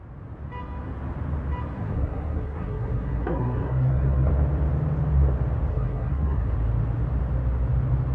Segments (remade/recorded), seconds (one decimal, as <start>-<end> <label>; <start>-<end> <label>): 0.0-1.8 recorded; 1.8-4.3 remade; 4.3-5.7 recorded; 5.7-6.5 remade; 6.5-8.1 recorded